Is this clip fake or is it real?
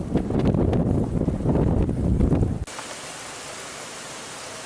real